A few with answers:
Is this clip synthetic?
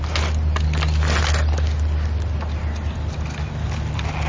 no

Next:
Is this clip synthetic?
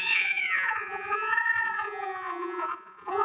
yes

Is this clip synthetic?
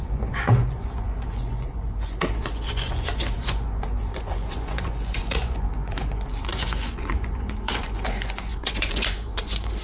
yes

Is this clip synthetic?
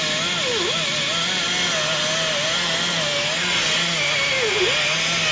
no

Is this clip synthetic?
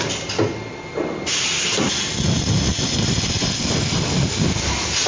no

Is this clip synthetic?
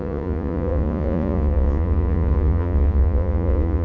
yes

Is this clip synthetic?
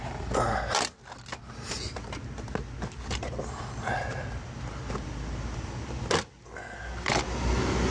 no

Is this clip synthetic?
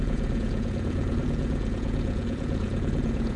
yes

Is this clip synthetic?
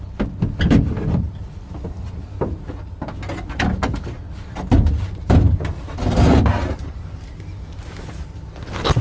no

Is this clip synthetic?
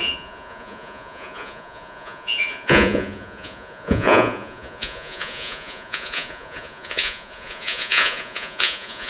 yes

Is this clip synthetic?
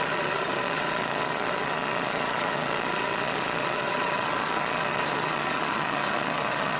yes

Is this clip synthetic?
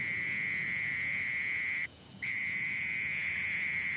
yes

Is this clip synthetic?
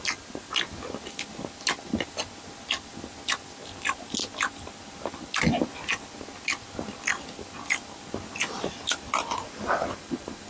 no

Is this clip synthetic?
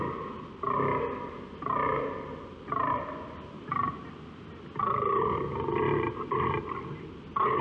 no